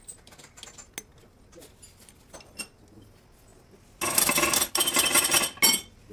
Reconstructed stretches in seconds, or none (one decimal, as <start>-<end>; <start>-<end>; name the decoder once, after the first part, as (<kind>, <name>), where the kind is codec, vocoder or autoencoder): none